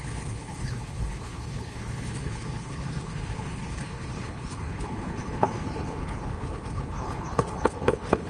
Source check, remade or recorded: remade